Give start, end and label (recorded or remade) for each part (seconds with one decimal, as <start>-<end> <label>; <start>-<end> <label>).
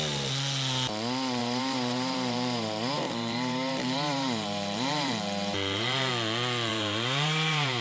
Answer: 0.0-1.4 recorded; 1.4-6.1 remade; 6.1-6.7 recorded; 6.7-7.8 remade